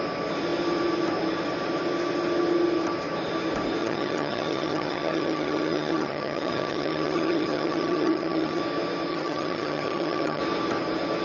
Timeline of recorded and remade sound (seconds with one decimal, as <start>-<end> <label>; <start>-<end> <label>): 0.0-3.8 recorded; 3.8-8.6 remade; 8.6-9.1 recorded; 9.1-10.4 remade; 10.4-11.2 recorded